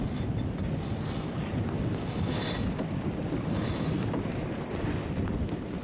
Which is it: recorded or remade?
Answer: recorded